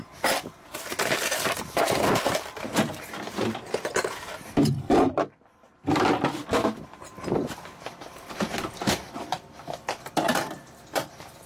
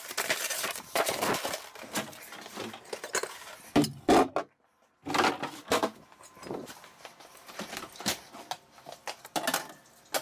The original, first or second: second